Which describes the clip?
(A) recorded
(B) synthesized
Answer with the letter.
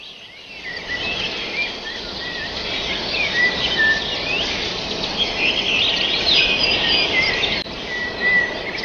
A